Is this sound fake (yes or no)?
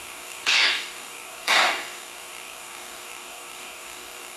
yes